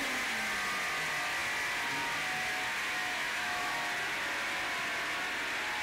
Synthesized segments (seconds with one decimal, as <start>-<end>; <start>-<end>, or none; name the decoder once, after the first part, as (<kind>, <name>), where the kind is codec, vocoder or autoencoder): 3.0-3.7 (autoencoder, DAC-VAE)